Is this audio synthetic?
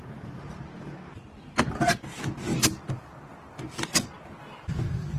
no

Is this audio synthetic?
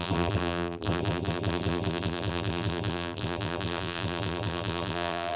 yes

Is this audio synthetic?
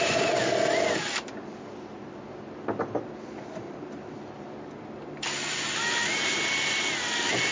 yes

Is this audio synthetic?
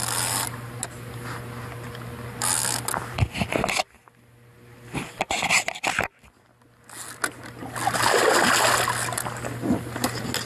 no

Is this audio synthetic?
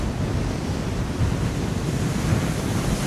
yes